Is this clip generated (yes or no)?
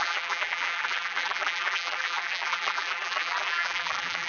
yes